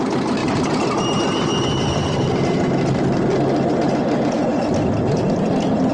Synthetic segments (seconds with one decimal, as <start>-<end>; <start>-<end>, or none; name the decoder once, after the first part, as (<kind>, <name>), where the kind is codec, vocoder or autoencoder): 0.4-1.0 (vocoder, BigVGAN v2)